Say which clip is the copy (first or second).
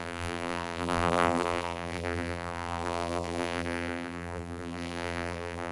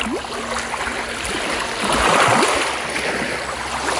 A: first